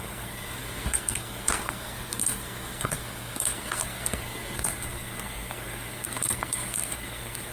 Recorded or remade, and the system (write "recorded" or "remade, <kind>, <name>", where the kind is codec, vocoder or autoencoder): remade, codec, SNAC